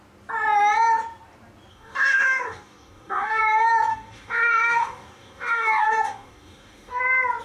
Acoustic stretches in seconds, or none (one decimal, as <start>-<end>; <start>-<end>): 0.0-1.7; 3.4-3.9; 7.0-7.4